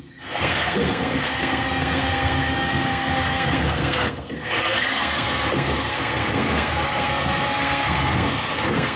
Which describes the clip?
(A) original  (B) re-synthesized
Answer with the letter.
B